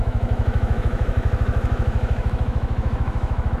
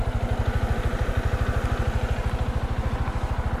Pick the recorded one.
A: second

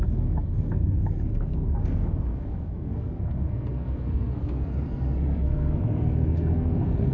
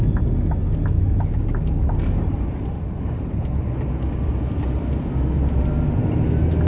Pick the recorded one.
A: second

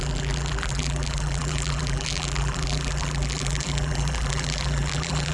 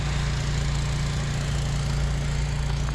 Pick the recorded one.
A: second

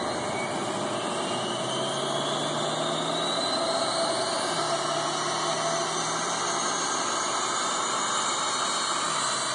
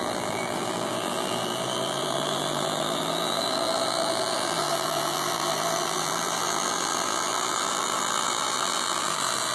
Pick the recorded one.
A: first